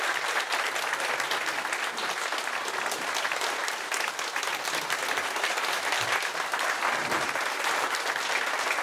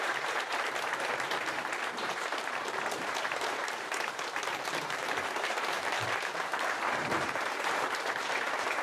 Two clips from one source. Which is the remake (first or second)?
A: second